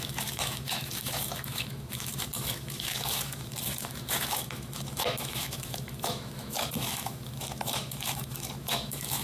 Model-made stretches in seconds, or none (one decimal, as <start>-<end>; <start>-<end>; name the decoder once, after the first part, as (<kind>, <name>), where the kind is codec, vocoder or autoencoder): 0.0-9.2 (autoencoder, DAC-VAE)